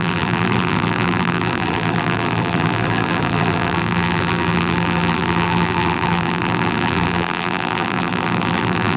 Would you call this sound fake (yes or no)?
yes